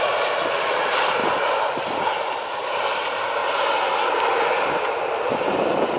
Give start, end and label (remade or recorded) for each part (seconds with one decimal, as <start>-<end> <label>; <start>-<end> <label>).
0.0-6.0 recorded

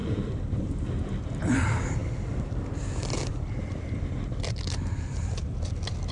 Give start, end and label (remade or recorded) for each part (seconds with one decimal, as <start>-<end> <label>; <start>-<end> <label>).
0.0-0.6 remade; 0.6-2.0 recorded; 2.0-6.1 remade

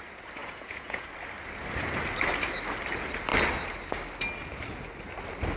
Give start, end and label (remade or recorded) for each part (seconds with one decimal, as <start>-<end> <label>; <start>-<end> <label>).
0.0-0.4 recorded; 0.4-1.1 remade; 1.1-5.6 recorded

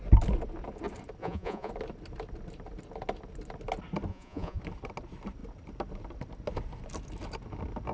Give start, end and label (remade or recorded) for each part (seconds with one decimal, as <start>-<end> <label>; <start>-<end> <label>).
0.0-1.2 recorded; 1.2-1.7 remade; 1.7-4.1 recorded; 4.1-4.6 remade; 4.6-7.9 recorded